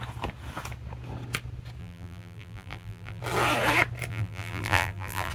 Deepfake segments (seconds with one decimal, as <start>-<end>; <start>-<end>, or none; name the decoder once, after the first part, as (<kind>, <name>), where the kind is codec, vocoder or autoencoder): 1.8-3.2 (vocoder, BigVGAN v2); 4.1-5.3